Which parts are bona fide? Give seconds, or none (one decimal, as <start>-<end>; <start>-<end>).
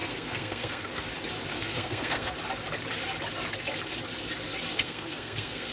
1.1-1.5; 2.3-4.7